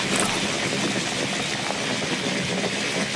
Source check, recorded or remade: recorded